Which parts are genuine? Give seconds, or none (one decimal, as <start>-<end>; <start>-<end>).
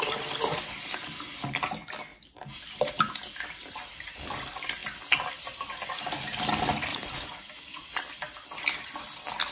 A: 0.0-6.9; 7.9-9.5